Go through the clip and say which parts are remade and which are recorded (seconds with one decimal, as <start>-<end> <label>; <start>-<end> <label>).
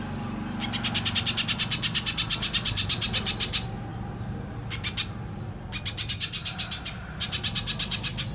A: 0.0-8.3 recorded